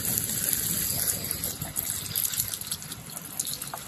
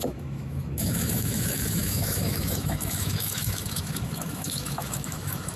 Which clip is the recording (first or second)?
first